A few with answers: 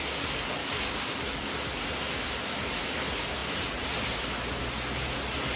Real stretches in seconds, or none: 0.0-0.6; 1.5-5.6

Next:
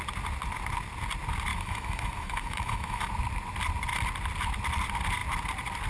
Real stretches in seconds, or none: 0.0-1.5; 3.1-5.9

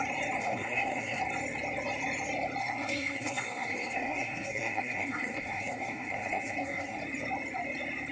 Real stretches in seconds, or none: 0.0-0.4; 1.2-2.6; 7.0-8.1

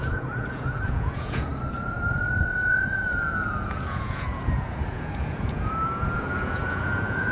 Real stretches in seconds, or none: 1.5-2.6

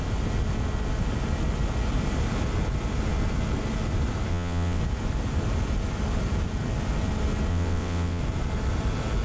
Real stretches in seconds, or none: 0.0-4.3; 4.8-7.5; 8.2-9.2